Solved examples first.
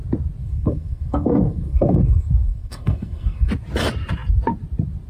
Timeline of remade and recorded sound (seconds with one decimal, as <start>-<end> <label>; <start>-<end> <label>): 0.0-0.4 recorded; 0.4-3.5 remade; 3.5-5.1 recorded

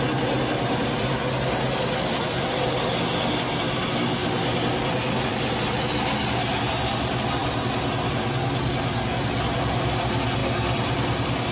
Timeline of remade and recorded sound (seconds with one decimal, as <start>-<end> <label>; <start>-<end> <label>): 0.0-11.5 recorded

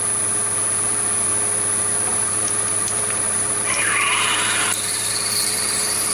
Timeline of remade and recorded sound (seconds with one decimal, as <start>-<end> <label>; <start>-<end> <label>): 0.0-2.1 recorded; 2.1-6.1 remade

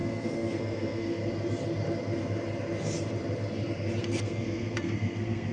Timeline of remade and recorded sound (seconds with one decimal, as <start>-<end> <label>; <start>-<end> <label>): 0.0-1.2 remade; 1.2-4.0 recorded; 4.0-5.5 remade

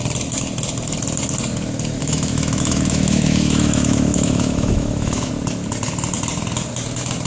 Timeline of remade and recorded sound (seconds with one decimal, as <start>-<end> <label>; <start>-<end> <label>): 0.0-2.0 recorded; 2.0-5.3 remade; 5.3-7.3 recorded

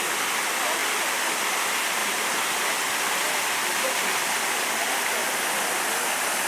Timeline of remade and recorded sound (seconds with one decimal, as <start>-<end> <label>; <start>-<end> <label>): 0.0-6.5 recorded

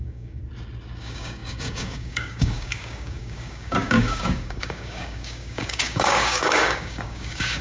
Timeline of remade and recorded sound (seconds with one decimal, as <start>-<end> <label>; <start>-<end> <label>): 0.0-0.4 remade; 0.4-1.0 recorded; 1.0-7.6 remade